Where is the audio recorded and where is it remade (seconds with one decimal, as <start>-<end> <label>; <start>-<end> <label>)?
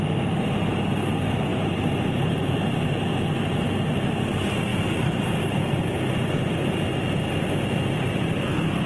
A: 0.0-8.9 recorded